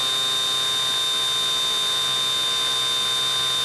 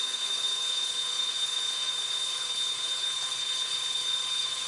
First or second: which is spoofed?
second